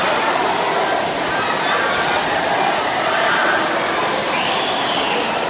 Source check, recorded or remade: recorded